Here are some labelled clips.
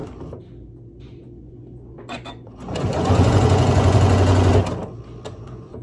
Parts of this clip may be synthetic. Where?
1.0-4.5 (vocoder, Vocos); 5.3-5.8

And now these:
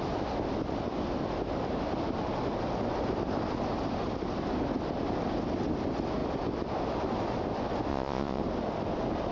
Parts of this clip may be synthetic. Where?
7.9-8.4 (vocoder, Vocos)